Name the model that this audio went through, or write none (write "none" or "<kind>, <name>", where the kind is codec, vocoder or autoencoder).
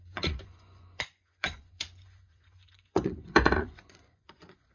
vocoder, Vocos